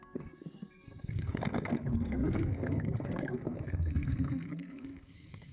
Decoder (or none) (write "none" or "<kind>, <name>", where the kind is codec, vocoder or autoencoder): codec, SNAC